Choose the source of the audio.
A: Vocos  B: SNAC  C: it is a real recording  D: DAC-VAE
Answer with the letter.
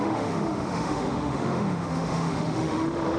D